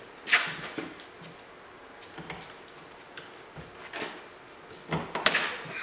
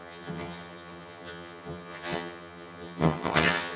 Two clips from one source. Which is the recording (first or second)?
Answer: first